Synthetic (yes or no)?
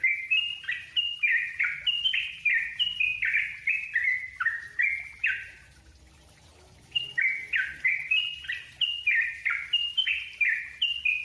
no